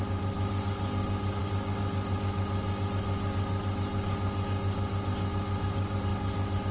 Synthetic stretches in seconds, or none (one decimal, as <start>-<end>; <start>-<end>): none